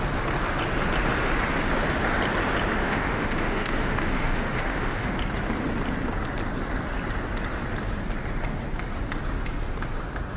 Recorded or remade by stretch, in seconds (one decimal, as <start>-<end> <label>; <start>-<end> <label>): 0.0-2.8 recorded; 2.8-5.1 remade; 5.1-10.4 recorded